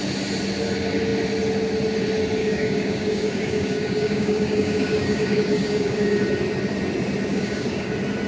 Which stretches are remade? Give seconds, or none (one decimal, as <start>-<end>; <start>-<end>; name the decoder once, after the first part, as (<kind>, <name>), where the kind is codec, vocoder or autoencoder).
2.4-6.2 (codec, DAC); 7.3-7.9